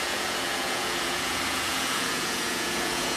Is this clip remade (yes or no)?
yes